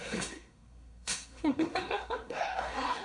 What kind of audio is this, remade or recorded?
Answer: remade